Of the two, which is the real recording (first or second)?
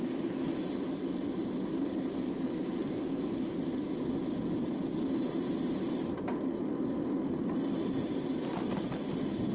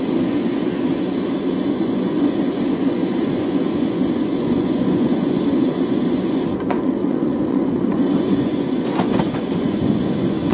first